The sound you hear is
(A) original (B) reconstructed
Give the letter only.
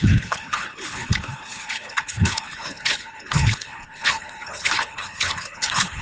B